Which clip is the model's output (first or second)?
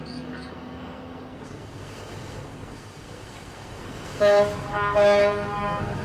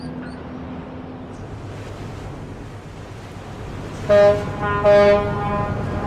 first